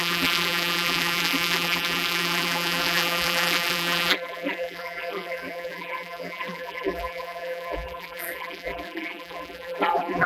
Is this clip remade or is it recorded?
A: remade